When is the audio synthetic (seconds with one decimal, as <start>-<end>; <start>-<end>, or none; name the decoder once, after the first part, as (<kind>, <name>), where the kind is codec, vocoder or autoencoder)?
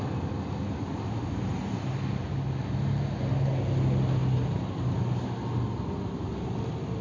none